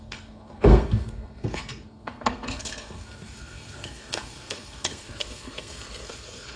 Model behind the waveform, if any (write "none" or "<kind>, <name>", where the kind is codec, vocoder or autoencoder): codec, SNAC